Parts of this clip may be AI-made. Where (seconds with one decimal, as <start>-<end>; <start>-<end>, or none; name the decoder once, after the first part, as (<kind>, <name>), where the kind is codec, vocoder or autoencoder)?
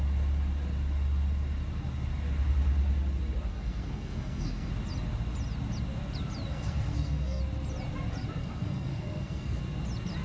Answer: 3.5-4.7 (codec, SNAC); 6.5-7.4; 8.4-9.6